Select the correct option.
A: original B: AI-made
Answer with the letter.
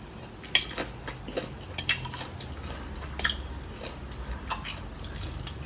A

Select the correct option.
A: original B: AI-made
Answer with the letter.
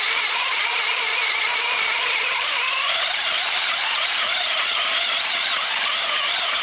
B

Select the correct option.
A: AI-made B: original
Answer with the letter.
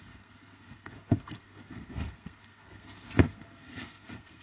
A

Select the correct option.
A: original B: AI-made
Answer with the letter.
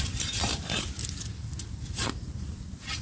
A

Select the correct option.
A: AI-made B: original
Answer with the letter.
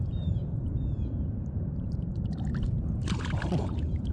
A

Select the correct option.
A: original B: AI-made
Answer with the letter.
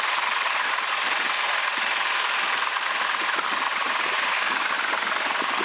A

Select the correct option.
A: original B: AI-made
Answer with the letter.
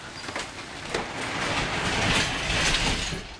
A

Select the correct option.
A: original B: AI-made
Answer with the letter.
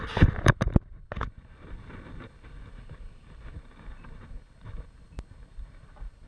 A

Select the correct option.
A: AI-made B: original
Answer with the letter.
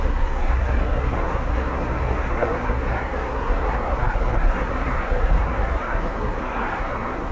A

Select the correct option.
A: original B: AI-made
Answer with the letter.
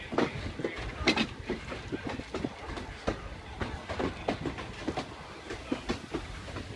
A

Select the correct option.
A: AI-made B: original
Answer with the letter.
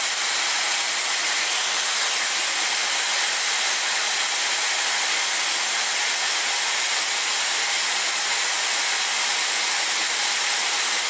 B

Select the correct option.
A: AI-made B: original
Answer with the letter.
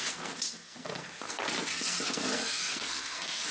A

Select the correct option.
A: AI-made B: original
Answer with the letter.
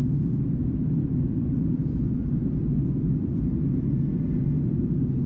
B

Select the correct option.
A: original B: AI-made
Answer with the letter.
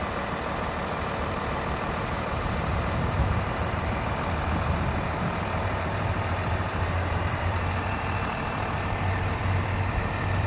B